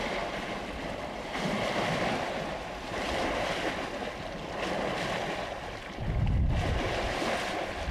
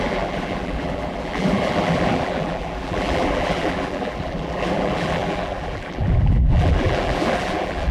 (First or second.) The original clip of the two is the first